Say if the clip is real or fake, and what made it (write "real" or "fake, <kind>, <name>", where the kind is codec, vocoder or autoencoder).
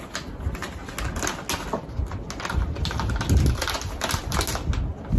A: real